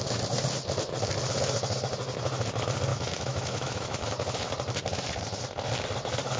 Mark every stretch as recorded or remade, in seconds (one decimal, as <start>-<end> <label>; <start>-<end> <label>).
0.0-2.9 recorded; 2.9-4.1 remade; 4.1-6.4 recorded